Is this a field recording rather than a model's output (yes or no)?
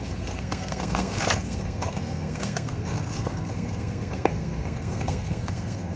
no